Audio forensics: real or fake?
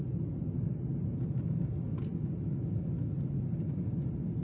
real